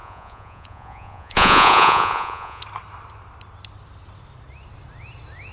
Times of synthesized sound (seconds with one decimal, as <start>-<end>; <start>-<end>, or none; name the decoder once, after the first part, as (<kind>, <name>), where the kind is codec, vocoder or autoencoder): 0.0-2.6 (vocoder, Vocos)